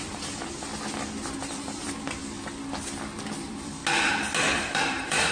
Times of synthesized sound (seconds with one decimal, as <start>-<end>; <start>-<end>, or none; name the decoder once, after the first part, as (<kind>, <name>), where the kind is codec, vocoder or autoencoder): 0.0-0.7 (vocoder, BigVGAN v2); 1.6-2.2; 3.4-3.8; 4.5-5.3